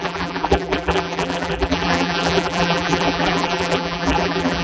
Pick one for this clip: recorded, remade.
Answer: remade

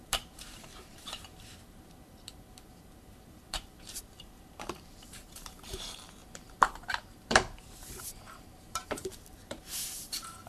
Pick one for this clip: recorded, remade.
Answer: remade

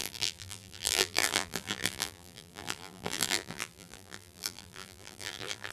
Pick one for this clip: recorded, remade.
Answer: remade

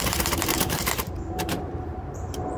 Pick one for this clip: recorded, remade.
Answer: remade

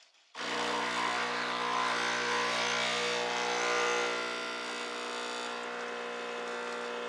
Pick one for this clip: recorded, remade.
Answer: recorded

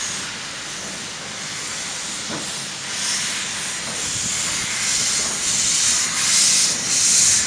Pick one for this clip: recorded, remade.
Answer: recorded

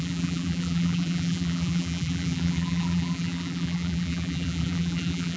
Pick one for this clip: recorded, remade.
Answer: remade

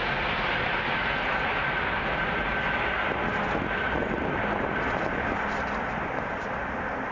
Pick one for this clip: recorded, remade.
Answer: recorded